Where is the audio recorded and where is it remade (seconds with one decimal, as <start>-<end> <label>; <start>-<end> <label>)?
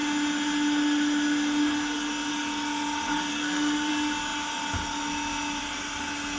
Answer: 0.0-3.3 recorded; 3.3-3.9 remade; 3.9-6.4 recorded